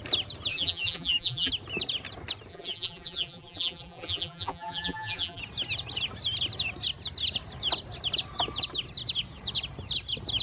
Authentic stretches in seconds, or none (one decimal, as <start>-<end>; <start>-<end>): 0.0-0.5; 1.5-2.5; 5.4-10.4